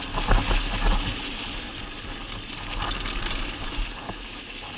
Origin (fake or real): real